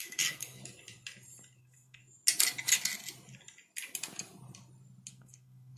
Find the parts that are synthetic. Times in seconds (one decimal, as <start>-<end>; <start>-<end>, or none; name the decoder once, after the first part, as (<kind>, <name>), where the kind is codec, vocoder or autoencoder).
0.0-0.6 (codec, SNAC); 1.6-2.0; 5.1-5.8